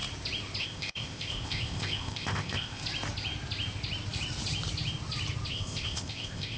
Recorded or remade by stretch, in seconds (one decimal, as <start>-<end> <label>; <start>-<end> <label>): 0.0-0.6 recorded; 0.6-2.8 remade; 2.8-5.5 recorded; 5.5-6.6 remade